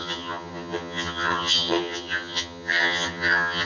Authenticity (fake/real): fake